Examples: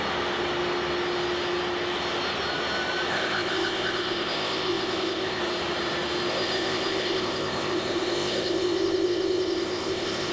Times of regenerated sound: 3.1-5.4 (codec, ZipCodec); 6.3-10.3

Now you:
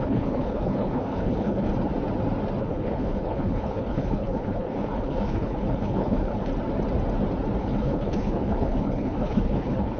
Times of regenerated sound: 0.0-1.7 (codec, HILCodec); 2.6-6.5; 7.6-10.0

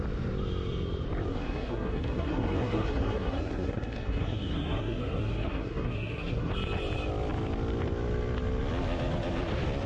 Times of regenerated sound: 1.3-6.5 (codec, SNAC)

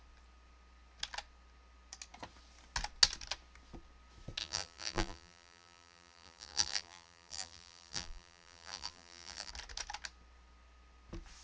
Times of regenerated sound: 4.4-9.5 (vocoder, BigVGAN v2)

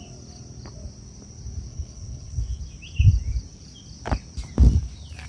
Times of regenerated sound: 1.7-2.6 (codec, HILCodec)

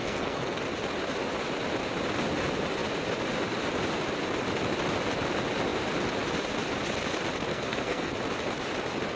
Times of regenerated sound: 0.0-0.6 (codec, SNAC); 7.5-8.1

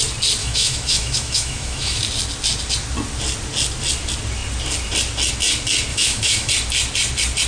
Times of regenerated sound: 0.4-2.0 (autoencoder, DAC-VAE); 5.9-6.5